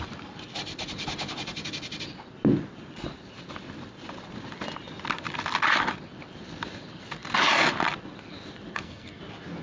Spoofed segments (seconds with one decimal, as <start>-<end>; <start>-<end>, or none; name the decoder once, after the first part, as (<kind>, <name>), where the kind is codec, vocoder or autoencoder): 8.7-9.2 (codec, SNAC)